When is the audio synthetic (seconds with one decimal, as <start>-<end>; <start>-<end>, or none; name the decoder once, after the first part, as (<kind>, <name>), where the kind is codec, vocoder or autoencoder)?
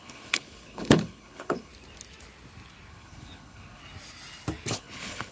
0.0-1.7 (codec, HILCodec); 2.9-3.8; 4.7-5.3